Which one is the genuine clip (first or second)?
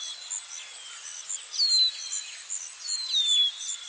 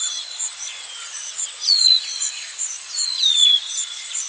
first